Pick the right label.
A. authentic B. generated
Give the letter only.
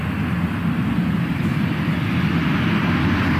A